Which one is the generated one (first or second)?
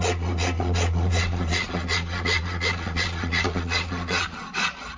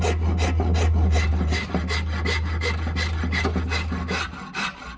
first